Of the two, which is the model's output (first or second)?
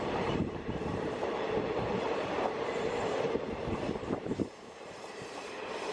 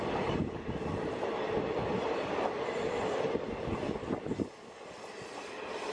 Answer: first